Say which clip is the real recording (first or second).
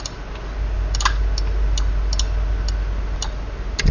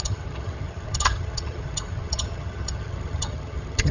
first